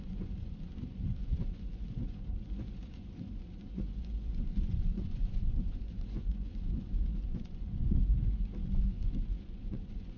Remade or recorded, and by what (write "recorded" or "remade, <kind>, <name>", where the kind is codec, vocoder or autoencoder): remade, vocoder, Vocos